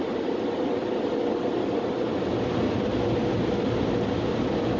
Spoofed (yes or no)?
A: no